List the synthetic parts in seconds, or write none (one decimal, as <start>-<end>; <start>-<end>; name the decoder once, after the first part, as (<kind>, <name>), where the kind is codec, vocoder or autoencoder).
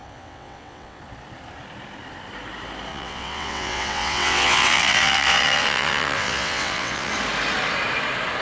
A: 0.0-1.0 (vocoder, WaveNeXt); 2.9-7.1